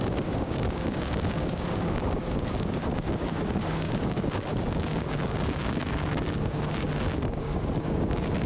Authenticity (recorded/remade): remade